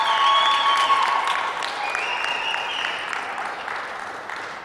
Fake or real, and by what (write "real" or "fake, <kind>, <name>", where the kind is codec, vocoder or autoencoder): real